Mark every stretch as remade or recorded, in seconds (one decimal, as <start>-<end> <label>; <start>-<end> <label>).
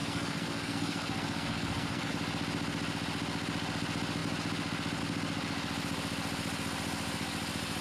0.0-2.1 remade; 2.1-7.8 recorded